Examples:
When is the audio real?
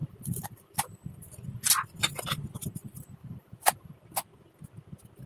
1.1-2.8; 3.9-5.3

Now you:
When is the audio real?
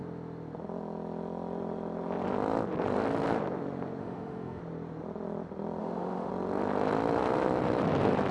0.0-4.0; 4.6-5.8; 6.3-8.3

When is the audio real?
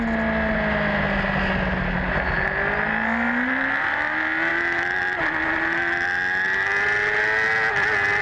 0.0-8.2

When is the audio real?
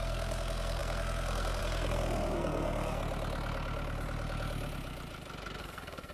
3.0-5.6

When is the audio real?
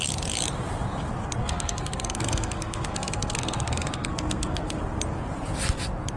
0.0-1.4; 4.8-6.2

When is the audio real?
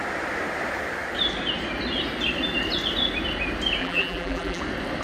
0.0-3.8; 4.6-5.0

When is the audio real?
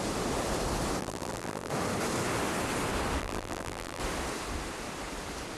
0.0-1.0; 1.7-3.2; 4.0-5.6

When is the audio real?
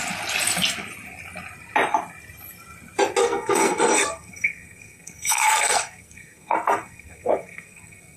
0.0-3.2